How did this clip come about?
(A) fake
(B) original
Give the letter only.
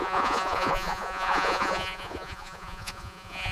A